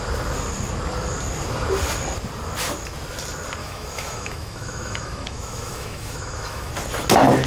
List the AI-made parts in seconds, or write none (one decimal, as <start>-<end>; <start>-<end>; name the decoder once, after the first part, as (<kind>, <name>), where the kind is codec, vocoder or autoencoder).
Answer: 3.6-6.7 (autoencoder, DAC-VAE)